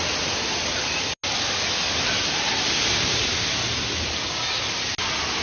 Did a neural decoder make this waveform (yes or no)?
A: no